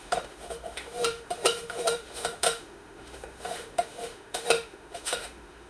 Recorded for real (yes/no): no